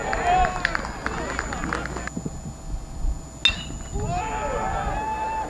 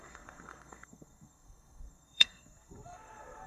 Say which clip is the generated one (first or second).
second